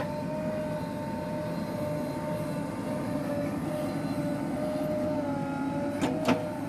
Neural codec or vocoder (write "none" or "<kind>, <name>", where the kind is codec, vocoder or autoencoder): none